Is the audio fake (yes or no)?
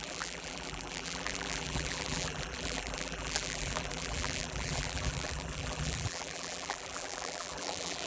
yes